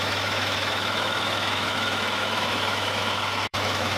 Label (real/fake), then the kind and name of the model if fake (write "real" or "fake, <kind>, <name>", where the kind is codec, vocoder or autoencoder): fake, autoencoder, DAC-VAE